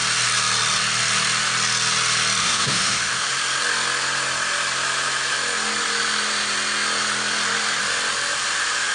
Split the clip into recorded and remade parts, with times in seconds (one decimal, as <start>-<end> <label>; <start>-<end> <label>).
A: 0.0-2.4 recorded; 2.4-3.3 remade; 3.3-8.9 recorded